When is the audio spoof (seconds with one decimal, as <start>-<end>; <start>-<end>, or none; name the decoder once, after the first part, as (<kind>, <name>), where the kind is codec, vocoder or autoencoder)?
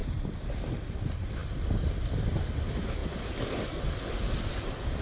0.0-3.0 (vocoder, BigVGAN v2); 4.5-5.0